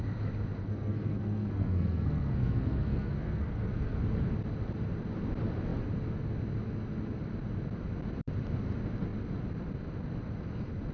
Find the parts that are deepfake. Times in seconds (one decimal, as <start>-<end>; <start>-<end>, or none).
0.6-4.0